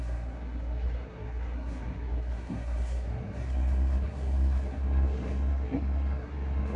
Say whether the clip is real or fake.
fake